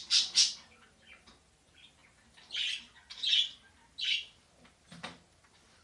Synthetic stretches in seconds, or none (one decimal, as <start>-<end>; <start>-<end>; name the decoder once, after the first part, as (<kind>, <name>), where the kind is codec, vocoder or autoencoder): none